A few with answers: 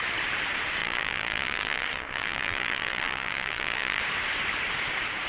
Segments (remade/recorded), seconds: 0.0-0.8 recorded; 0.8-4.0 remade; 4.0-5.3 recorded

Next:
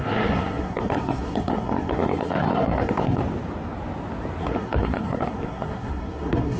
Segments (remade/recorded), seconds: 0.0-3.2 remade; 3.2-4.4 recorded; 4.4-6.6 remade

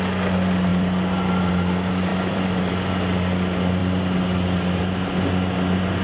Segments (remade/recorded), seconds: 0.0-0.7 recorded; 0.7-1.5 remade; 1.5-2.1 recorded; 2.1-2.7 remade; 2.7-6.0 recorded

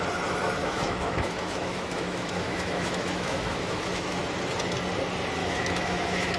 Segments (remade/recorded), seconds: 0.0-0.6 recorded; 0.6-4.2 remade; 4.2-5.4 recorded; 5.4-6.4 remade

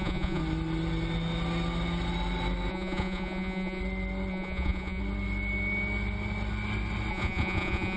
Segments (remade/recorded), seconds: 0.0-0.4 remade; 0.4-2.7 recorded; 2.7-3.8 remade; 3.8-4.3 recorded; 4.3-5.0 remade; 5.0-7.1 recorded; 7.1-8.0 remade

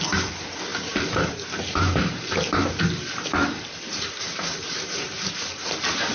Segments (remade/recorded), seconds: 0.0-0.7 recorded; 0.7-2.6 remade; 2.6-3.4 recorded; 3.4-6.1 remade